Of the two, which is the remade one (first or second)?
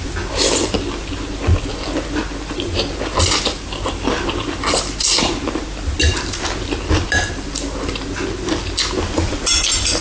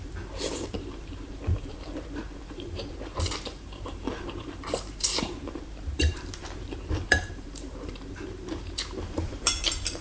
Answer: second